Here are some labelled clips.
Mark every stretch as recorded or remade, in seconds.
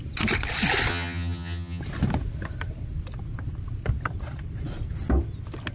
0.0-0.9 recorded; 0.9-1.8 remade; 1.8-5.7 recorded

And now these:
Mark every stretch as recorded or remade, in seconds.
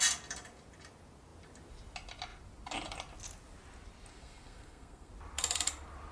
0.0-4.1 recorded; 4.1-5.1 remade; 5.1-6.1 recorded